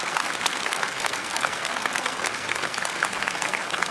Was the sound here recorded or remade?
remade